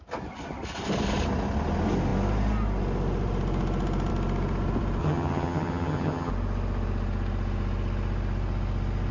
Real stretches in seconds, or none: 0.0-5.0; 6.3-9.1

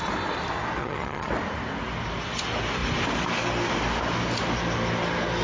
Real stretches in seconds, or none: 0.0-0.8; 1.3-5.4

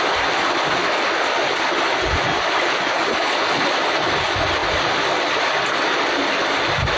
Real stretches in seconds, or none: 0.0-7.0